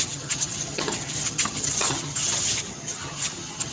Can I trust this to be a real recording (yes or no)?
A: no